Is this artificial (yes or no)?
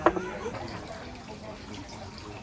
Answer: no